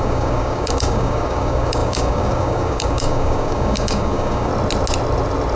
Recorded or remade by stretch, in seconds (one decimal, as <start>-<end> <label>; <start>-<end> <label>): 0.0-4.5 remade; 4.5-5.6 recorded